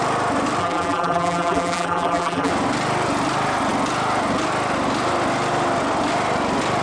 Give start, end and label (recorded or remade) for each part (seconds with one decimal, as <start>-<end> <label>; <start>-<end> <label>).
0.0-0.6 recorded; 0.6-2.5 remade; 2.5-6.8 recorded